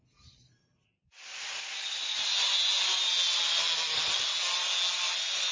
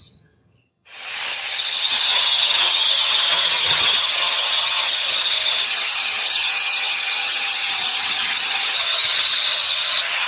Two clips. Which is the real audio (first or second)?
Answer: first